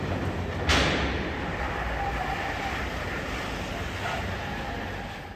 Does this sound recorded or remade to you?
recorded